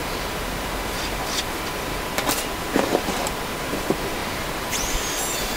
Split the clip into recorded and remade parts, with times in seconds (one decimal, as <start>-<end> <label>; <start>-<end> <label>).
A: 0.0-5.6 remade